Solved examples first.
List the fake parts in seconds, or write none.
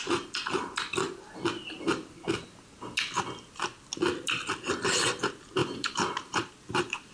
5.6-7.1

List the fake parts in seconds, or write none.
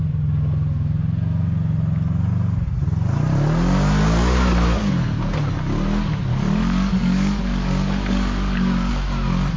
6.3-8.9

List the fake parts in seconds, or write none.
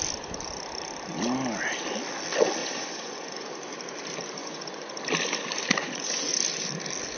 2.6-3.5; 4.4-4.9; 5.8-6.4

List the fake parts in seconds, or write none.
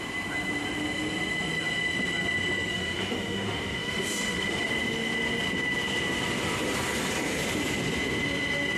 2.7-4.7